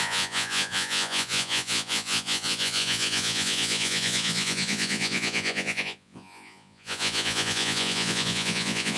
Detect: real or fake fake